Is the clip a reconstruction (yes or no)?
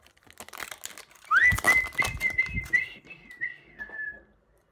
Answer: no